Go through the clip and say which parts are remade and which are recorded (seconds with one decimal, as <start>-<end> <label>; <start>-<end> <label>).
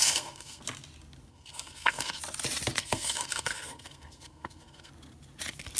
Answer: 0.0-0.6 remade; 0.6-1.3 recorded; 1.3-2.2 remade; 2.2-2.8 recorded; 2.8-4.9 remade; 4.9-5.8 recorded